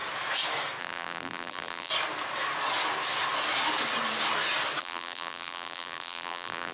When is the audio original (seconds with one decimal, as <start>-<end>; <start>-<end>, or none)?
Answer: 0.0-0.8; 1.9-4.8